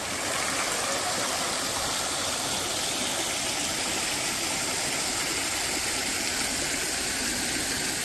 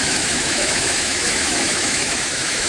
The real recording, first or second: first